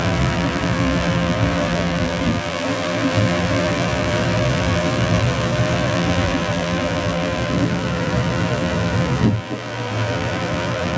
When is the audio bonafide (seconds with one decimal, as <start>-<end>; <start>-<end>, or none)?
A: none